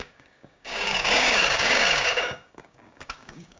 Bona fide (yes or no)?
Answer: no